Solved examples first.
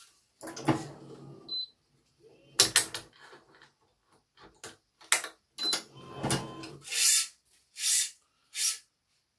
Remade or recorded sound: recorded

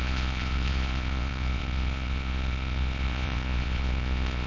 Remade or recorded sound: remade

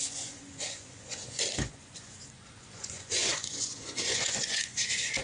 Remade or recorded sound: remade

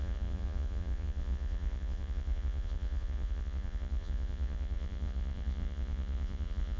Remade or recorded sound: remade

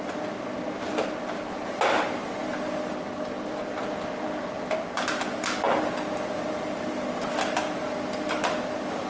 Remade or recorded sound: recorded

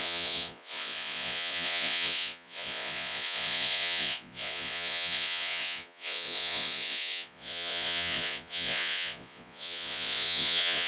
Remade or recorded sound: remade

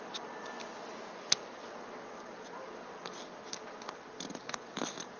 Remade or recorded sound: recorded